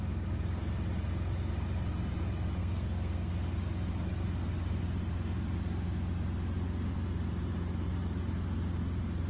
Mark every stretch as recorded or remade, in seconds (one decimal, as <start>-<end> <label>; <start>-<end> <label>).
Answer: 0.0-2.6 recorded; 2.6-3.3 remade; 3.3-9.3 recorded